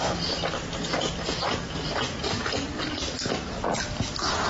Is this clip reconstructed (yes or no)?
no